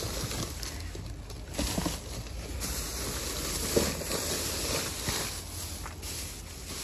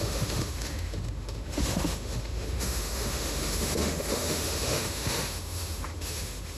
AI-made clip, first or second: second